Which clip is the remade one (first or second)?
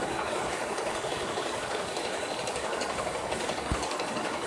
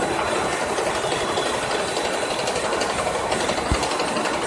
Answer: first